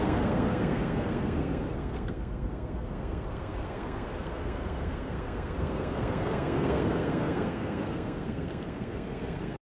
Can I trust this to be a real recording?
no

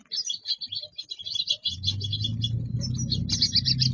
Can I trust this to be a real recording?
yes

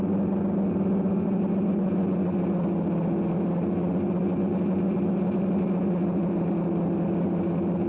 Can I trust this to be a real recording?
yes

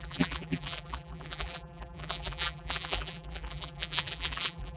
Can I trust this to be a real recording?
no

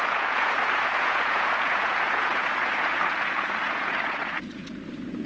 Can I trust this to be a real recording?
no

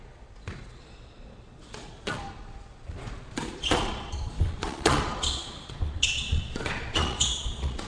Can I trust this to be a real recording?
no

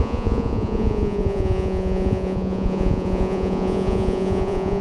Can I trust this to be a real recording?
no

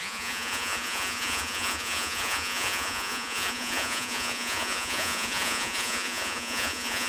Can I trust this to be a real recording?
no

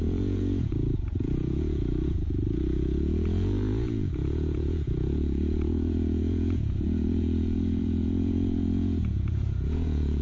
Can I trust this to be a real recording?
no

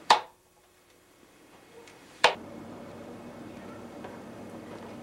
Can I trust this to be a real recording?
no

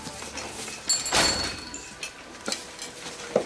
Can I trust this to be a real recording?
yes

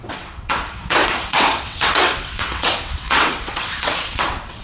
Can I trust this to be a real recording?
no